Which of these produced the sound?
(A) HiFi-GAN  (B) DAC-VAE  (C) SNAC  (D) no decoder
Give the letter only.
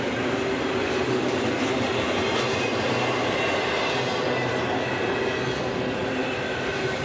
D